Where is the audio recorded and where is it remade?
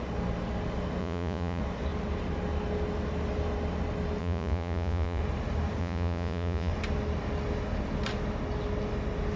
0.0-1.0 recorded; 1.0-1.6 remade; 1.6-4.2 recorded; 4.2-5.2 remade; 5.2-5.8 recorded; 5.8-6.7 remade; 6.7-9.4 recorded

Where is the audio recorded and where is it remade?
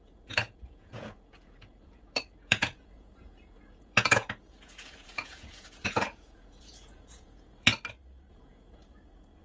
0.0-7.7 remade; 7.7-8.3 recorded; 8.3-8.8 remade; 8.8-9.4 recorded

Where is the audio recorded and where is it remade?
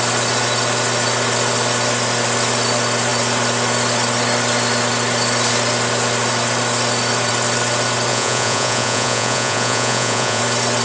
0.0-8.1 recorded; 8.1-10.4 remade; 10.4-10.8 recorded